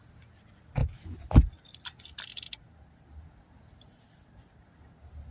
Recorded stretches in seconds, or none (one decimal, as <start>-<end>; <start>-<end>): 0.0-5.3